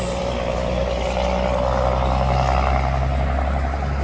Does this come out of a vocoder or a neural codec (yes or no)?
no